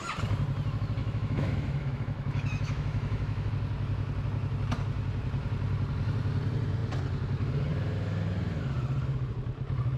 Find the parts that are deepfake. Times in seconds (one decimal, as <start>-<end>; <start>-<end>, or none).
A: 1.0-3.5